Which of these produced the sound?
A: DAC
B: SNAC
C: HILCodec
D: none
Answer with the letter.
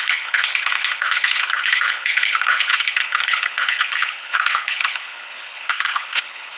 C